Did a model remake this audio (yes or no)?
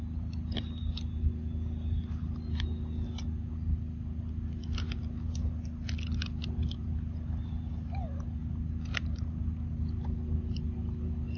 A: no